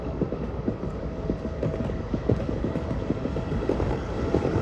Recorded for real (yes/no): no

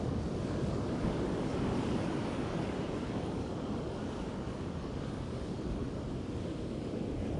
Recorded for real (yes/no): no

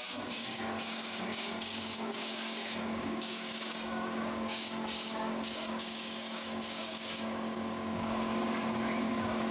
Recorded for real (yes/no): no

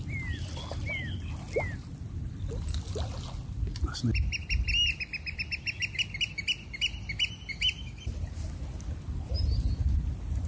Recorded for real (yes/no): yes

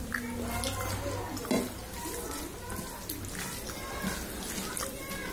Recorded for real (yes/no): yes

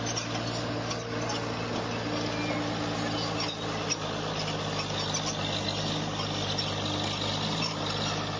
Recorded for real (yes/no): yes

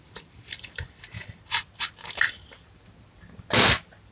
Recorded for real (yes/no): yes